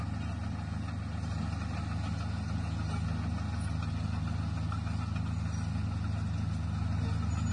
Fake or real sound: real